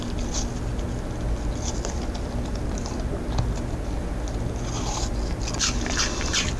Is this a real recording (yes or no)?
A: yes